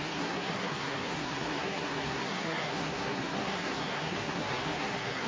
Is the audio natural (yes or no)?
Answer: no